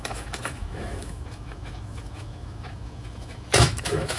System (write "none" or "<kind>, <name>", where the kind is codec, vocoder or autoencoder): autoencoder, DAC-VAE